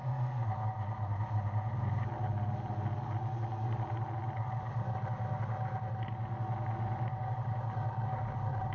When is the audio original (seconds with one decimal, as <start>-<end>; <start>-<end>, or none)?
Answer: 0.0-8.7